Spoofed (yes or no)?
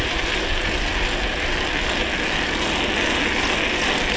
no